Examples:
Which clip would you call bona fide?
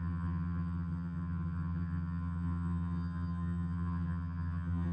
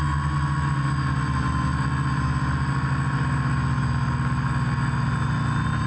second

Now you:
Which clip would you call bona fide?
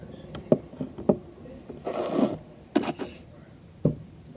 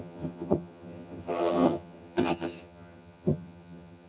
first